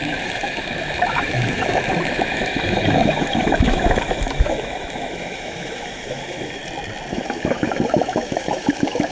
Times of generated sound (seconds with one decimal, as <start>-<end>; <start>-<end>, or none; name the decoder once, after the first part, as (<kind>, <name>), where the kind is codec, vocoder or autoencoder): 0.0-6.6 (autoencoder, DAC-VAE); 7.1-9.1

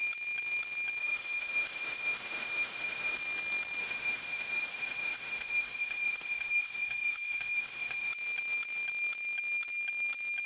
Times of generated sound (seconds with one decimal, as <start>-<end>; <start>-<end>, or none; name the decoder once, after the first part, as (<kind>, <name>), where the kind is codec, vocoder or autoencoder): 1.0-3.2 (autoencoder, DAC-VAE); 3.8-8.1

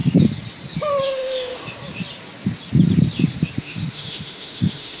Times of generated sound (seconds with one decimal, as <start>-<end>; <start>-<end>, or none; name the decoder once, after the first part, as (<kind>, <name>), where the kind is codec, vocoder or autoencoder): 1.0-1.6 (autoencoder, DAC-VAE); 3.6-5.0

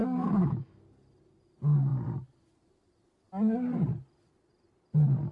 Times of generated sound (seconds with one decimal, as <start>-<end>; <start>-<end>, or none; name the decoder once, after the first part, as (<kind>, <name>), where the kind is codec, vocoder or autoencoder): 0.0-0.8 (autoencoder, DAC-VAE)

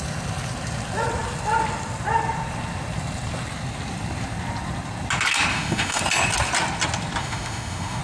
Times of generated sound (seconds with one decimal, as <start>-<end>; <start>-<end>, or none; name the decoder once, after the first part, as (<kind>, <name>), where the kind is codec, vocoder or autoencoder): 5.5-6.0 (autoencoder, DAC-VAE); 7.2-8.0

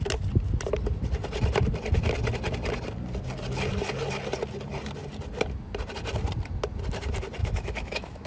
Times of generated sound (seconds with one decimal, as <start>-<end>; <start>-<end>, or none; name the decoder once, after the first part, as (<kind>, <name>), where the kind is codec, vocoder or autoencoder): 7.4-8.3 (autoencoder, DAC-VAE)

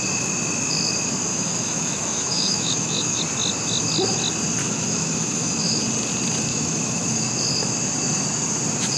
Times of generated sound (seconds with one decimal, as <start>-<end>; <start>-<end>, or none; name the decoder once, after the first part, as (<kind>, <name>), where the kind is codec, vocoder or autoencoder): 1.3-3.2 (autoencoder, DAC-VAE); 4.6-5.8; 6.5-7.3